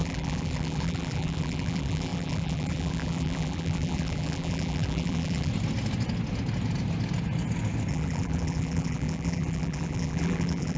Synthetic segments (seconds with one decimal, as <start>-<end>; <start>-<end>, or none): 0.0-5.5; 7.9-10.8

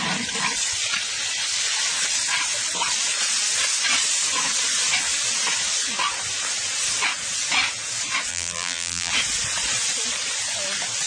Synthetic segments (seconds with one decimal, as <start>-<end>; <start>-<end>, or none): 8.3-9.1

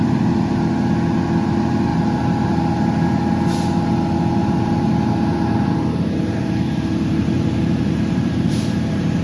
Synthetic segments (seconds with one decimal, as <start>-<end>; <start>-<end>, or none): 1.9-2.6; 4.4-9.2

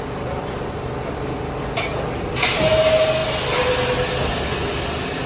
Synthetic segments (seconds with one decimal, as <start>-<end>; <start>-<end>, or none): 4.6-5.3

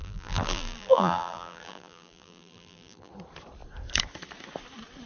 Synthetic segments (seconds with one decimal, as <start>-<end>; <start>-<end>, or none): 0.0-3.1